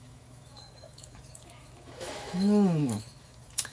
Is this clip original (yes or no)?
no